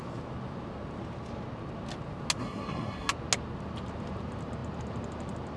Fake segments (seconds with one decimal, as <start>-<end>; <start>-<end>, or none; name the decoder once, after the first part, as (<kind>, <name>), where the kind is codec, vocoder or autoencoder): 2.4-3.1 (codec, SNAC)